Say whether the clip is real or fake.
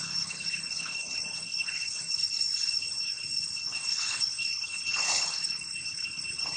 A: fake